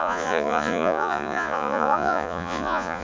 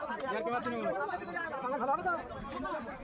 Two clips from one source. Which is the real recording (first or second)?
second